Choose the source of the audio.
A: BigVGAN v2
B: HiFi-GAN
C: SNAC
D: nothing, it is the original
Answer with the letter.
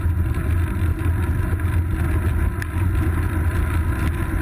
D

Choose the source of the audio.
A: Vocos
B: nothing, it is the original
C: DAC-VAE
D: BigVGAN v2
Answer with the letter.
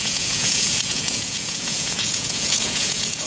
A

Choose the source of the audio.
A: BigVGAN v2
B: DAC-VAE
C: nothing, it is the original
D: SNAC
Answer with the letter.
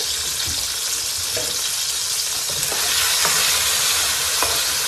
C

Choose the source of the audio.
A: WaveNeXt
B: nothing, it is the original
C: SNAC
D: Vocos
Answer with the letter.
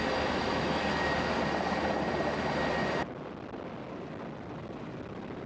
B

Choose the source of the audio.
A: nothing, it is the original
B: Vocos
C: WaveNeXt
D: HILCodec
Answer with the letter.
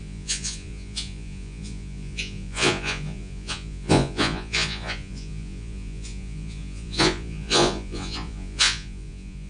B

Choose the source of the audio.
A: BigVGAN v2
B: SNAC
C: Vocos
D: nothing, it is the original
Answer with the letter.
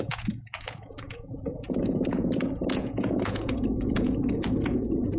C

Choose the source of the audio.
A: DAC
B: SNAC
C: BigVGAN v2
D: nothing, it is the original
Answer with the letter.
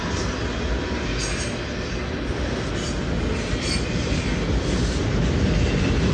D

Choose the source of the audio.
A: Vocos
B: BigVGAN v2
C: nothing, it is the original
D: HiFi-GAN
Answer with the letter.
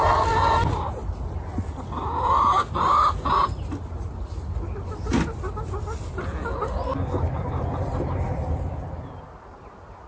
C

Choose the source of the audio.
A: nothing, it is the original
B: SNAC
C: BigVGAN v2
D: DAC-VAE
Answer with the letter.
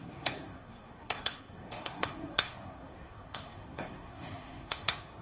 B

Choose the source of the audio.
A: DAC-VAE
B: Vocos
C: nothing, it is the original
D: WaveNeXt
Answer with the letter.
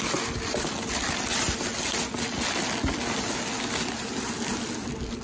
C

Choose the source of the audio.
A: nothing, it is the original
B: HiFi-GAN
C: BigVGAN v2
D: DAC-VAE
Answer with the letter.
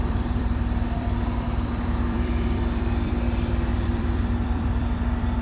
C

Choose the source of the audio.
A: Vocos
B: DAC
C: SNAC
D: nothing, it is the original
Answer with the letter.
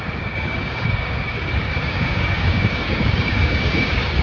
B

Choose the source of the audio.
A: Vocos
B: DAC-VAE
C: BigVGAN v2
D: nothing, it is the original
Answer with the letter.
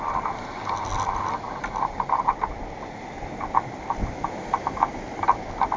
D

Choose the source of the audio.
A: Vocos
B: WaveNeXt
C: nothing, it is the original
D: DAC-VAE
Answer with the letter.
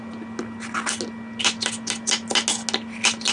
C